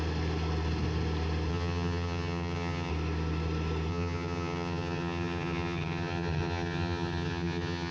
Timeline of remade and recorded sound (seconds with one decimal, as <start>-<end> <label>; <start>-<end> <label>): 0.0-1.5 recorded; 1.5-2.9 remade; 2.9-3.9 recorded; 3.9-7.9 remade